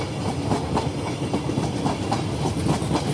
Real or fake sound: real